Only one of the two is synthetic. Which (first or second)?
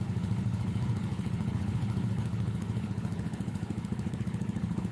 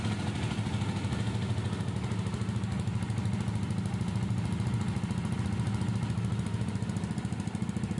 first